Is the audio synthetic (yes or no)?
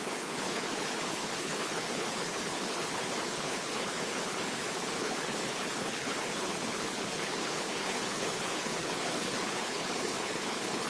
yes